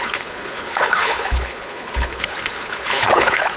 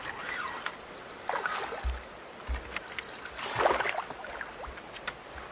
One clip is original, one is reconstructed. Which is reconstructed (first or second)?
first